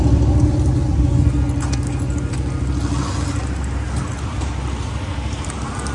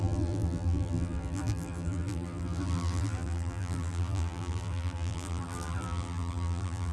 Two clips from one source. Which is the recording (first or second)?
first